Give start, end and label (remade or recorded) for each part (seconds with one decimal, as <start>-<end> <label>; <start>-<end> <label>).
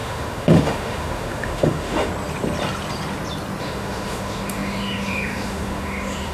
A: 0.0-2.1 remade; 2.1-3.6 recorded; 3.6-6.3 remade